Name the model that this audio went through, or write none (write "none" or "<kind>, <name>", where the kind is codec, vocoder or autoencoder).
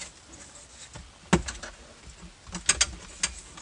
none